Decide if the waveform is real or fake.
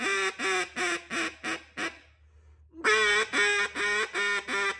real